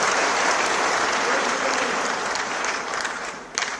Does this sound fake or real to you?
fake